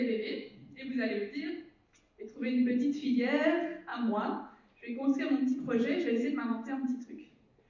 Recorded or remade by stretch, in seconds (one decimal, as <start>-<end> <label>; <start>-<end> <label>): 0.0-3.9 recorded; 3.9-7.7 remade